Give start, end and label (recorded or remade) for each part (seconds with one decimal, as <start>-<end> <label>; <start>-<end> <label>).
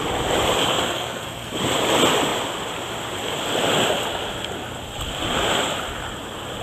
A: 0.0-0.7 recorded; 0.7-1.5 remade; 1.5-6.6 recorded